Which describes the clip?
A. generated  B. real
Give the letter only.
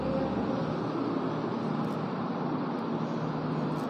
B